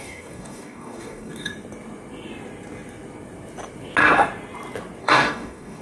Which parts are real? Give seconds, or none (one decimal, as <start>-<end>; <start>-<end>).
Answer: 1.5-5.0